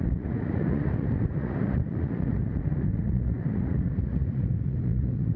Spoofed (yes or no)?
yes